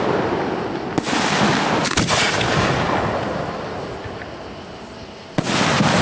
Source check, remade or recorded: recorded